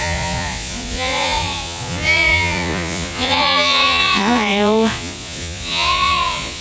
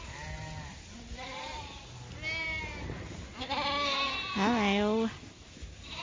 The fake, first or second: first